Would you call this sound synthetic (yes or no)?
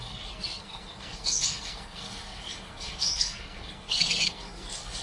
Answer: yes